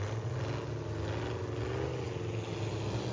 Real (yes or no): yes